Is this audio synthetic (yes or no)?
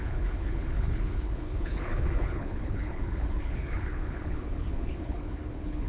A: yes